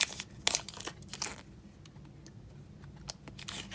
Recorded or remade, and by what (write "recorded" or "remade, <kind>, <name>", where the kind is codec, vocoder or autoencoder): recorded